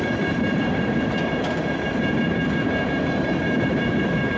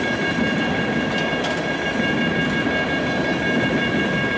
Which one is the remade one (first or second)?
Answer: first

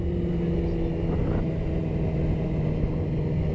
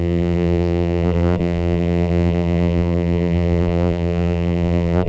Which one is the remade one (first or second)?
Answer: second